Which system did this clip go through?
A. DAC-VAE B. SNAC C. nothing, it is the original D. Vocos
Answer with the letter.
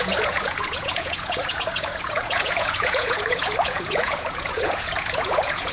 D